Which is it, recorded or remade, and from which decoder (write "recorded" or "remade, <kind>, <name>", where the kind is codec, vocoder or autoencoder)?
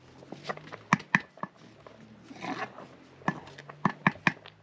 recorded